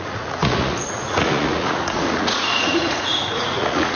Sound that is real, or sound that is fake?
fake